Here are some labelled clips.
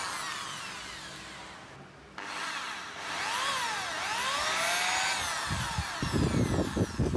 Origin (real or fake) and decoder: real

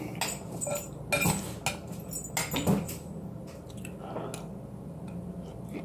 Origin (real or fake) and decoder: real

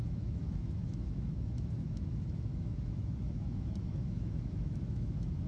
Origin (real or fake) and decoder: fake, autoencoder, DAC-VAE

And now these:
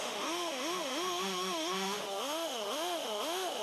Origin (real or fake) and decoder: fake, autoencoder, DAC-VAE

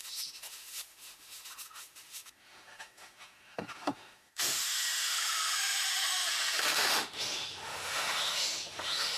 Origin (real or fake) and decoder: fake, autoencoder, DAC-VAE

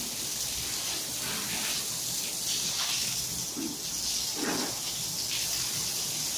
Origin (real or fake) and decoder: real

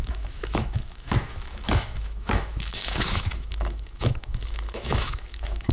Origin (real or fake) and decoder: fake, autoencoder, DAC-VAE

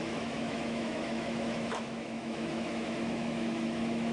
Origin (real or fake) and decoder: fake, autoencoder, DAC-VAE